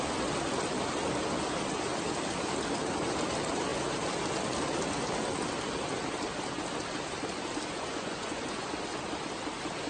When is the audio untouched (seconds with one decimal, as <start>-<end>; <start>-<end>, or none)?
0.0-7.7; 8.7-9.9